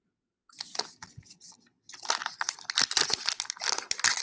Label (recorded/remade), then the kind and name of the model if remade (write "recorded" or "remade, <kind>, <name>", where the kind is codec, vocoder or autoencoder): recorded